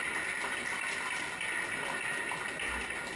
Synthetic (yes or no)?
no